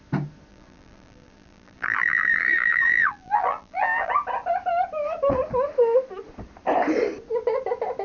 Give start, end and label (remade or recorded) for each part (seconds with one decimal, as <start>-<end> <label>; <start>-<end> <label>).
0.0-0.5 recorded; 0.5-4.1 remade; 4.1-8.0 recorded